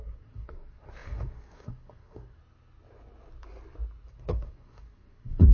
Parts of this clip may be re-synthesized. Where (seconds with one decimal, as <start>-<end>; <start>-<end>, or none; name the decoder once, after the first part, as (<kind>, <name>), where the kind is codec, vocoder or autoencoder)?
0.0-2.4 (codec, SNAC); 4.1-5.5